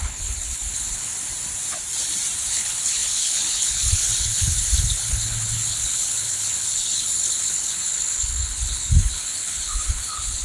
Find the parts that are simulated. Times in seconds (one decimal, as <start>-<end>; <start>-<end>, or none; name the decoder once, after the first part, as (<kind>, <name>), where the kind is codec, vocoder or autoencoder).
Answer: 0.0-1.1 (codec, HILCodec); 2.4-10.4